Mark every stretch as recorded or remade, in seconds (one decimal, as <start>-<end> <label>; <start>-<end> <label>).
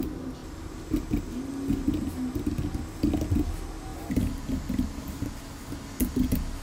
0.0-3.9 recorded; 3.9-5.7 remade; 5.7-6.6 recorded